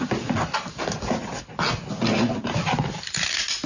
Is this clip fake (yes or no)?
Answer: no